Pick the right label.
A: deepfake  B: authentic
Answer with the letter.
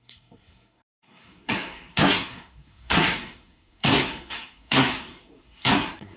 A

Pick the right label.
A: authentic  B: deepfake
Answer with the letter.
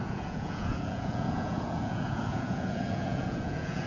B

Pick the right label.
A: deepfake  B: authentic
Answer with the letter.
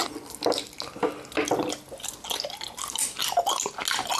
B